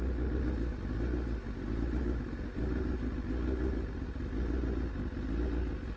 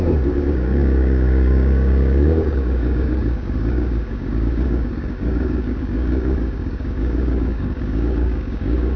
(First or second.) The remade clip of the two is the second